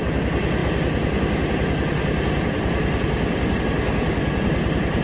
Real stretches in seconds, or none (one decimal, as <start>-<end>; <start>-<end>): 0.0-0.6; 3.6-5.0